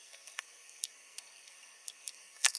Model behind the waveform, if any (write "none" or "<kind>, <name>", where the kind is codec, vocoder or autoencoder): codec, SNAC